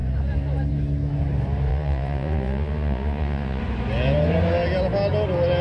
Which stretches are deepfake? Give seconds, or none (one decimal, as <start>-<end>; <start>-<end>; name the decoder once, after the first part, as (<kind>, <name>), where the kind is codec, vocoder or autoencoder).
1.7-3.6 (vocoder, Vocos)